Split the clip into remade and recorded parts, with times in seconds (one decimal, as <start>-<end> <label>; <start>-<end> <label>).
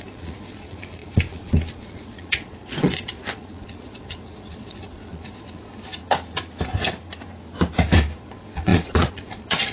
0.0-5.9 remade; 5.9-8.2 recorded; 8.2-9.7 remade